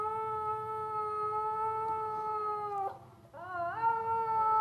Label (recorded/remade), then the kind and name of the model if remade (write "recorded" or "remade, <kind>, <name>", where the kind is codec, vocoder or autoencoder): recorded